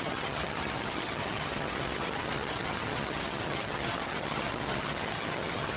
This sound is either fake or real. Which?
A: fake